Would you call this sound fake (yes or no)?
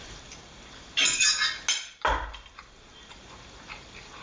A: no